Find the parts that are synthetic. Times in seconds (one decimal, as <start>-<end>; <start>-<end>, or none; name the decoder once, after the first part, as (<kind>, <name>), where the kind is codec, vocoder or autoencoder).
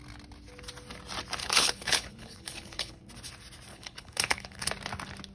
1.4-3.0 (codec, HILCodec); 3.7-4.7